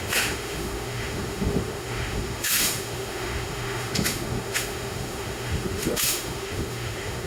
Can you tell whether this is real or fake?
fake